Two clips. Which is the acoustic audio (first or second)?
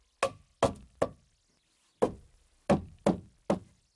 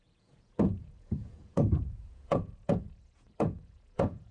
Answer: first